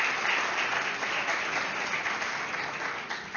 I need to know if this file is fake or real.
real